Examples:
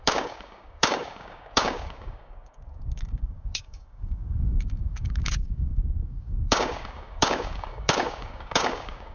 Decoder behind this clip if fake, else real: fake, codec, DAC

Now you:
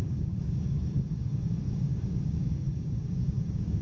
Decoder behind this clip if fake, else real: fake, codec, DAC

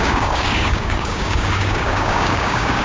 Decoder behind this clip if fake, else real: fake, codec, DAC